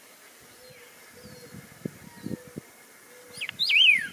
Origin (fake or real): real